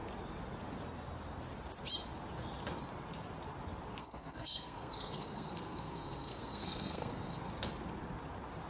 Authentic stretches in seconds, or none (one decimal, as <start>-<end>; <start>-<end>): 0.0-4.0; 7.5-8.7